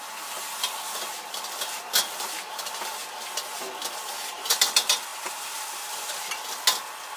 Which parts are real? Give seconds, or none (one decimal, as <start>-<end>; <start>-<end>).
0.0-5.1; 6.3-7.2